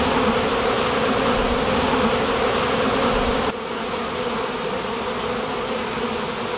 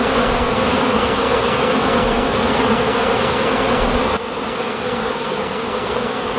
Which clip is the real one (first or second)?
first